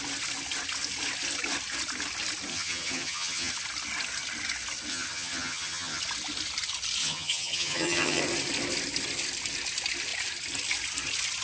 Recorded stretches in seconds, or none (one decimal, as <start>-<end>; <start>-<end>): 0.0-2.5; 3.5-4.9; 6.0-7.0; 8.2-11.4